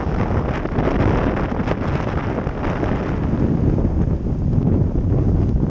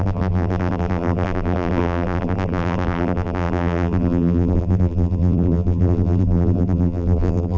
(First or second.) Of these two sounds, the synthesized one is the second